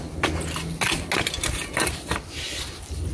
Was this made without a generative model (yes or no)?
yes